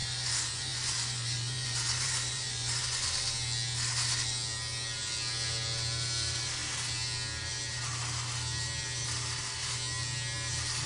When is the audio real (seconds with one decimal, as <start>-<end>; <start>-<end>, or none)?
3.1-10.9

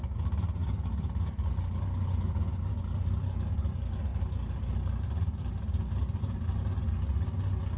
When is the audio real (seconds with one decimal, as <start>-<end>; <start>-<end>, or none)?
0.0-7.8